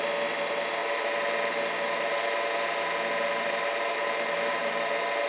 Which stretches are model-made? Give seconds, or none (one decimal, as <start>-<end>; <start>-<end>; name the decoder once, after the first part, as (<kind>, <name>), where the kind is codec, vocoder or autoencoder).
none